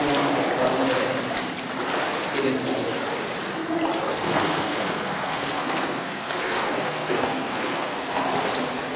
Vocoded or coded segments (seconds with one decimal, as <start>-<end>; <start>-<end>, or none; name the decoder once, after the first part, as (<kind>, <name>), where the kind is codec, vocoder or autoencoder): 4.1-8.2 (codec, SNAC)